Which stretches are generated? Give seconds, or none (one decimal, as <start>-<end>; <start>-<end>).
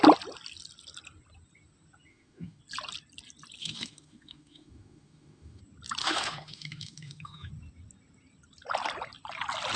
2.1-2.6; 3.6-5.6; 6.0-7.5